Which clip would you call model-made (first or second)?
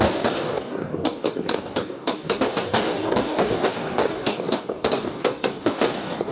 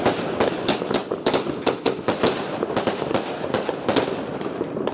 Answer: first